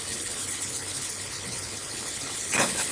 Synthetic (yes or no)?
yes